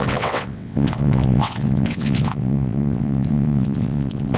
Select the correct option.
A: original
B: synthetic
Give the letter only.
B